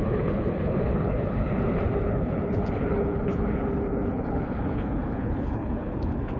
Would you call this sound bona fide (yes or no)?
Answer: no